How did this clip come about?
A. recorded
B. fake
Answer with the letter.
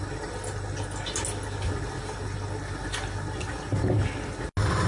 A